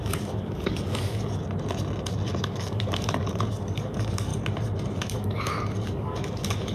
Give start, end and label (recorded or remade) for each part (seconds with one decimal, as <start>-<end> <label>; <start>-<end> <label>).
0.0-1.4 remade; 1.4-2.4 recorded; 2.4-4.3 remade; 4.3-5.0 recorded; 5.0-6.7 remade